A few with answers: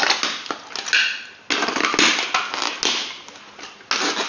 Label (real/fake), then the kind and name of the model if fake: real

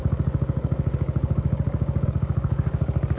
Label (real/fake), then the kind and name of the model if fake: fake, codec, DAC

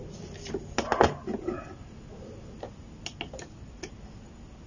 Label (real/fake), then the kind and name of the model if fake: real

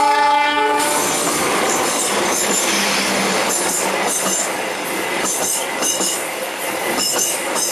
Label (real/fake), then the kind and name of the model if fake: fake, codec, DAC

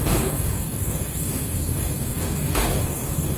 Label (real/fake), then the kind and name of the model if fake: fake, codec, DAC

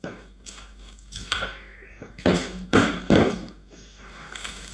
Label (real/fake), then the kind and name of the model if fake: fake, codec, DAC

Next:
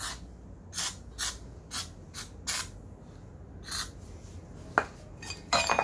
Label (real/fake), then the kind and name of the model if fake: real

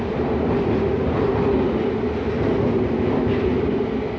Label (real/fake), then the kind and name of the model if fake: real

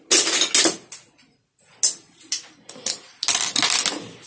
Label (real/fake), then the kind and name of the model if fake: real